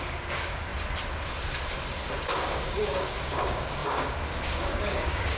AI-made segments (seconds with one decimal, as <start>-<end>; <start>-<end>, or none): 0.0-0.7; 2.4-5.4